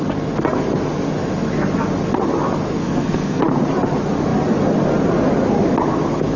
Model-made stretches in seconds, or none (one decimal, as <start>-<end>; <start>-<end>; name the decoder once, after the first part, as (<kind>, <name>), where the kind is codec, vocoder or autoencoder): 2.8-3.4 (codec, SNAC)